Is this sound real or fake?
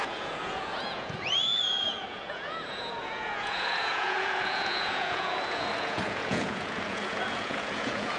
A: fake